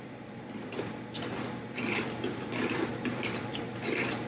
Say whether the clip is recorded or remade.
remade